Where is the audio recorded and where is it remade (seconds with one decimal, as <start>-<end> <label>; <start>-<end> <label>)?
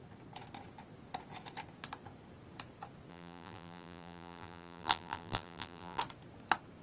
0.0-3.1 recorded; 3.1-6.0 remade; 6.0-6.8 recorded